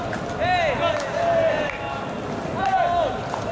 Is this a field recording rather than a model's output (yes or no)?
yes